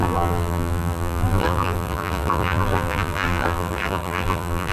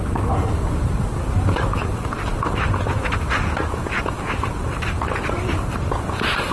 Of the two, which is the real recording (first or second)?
second